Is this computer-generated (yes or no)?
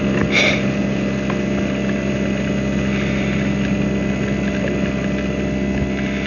no